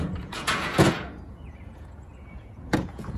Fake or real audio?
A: fake